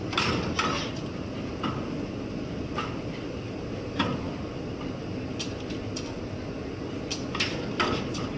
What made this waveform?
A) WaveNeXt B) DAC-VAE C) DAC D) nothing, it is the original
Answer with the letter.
D